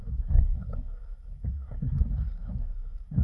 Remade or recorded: remade